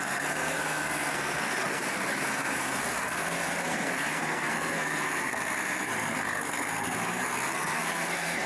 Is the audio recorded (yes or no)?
no